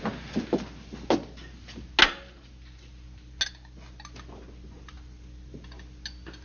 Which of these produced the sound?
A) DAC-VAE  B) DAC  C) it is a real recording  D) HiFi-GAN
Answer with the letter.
C